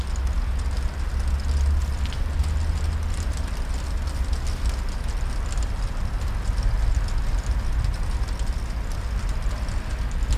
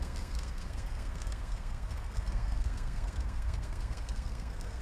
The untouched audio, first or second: first